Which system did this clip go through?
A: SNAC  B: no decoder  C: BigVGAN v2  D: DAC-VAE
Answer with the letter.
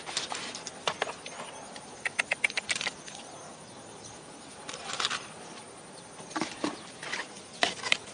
B